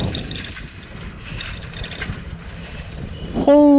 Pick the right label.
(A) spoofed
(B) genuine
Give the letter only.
B